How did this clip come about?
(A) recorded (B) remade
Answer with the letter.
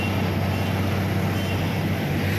A